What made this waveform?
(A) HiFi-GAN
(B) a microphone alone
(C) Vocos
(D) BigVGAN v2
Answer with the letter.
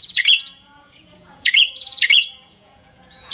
C